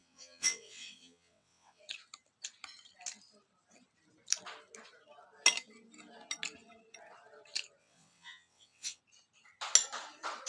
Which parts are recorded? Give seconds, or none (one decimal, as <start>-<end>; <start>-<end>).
1.8-7.8; 9.0-10.5